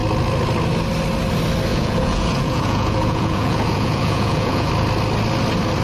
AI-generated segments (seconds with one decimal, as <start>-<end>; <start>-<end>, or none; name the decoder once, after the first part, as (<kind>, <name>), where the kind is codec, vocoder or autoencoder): 1.7-4.7 (vocoder, Vocos)